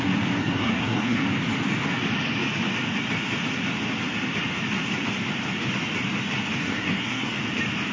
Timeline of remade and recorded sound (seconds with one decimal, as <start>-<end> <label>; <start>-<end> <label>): 0.0-0.4 recorded; 0.4-1.2 remade; 1.2-6.6 recorded; 6.6-7.3 remade; 7.3-7.9 recorded